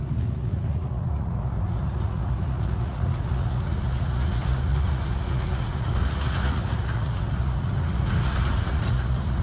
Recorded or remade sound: remade